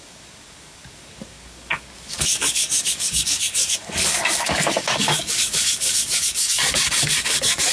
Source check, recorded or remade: remade